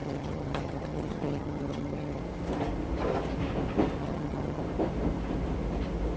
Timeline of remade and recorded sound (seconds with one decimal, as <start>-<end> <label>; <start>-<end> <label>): 0.0-2.2 remade; 2.2-4.0 recorded; 4.0-4.6 remade; 4.6-6.2 recorded